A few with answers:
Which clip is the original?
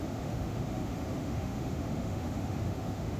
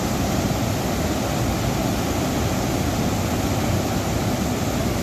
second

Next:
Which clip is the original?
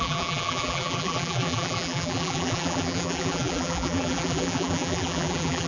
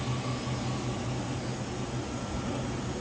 second